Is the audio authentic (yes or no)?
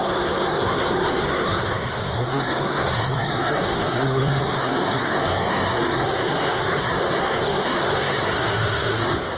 no